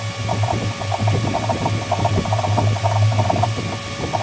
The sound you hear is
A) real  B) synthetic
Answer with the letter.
A